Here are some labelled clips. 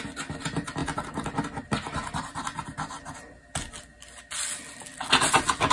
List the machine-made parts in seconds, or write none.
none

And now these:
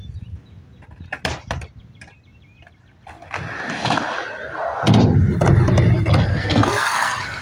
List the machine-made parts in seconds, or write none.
6.3-7.4 (codec, SNAC)

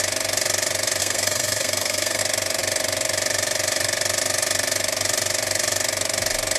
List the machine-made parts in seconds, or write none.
1.0-2.2 (codec, SNAC)

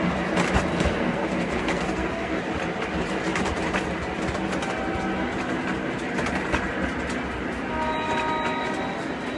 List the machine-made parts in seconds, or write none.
0.7-2.4 (codec, SNAC)

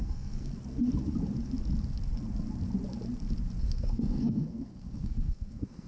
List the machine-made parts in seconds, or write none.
0.0-0.5 (codec, SNAC); 3.6-5.9

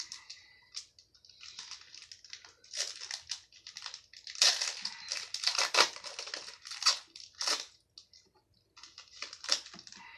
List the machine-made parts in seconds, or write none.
none

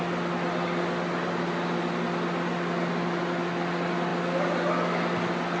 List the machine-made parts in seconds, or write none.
none